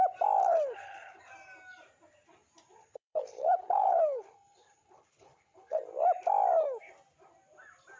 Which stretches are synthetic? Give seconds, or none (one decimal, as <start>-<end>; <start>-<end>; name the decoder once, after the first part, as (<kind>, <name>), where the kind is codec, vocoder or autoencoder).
0.4-1.2 (codec, HILCodec); 2.8-5.8